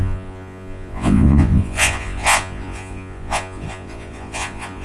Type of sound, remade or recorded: remade